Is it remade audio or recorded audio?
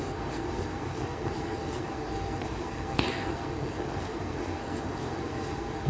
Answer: remade